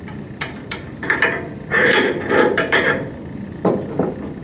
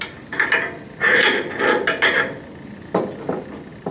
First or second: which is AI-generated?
first